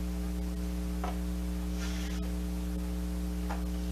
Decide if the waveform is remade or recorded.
recorded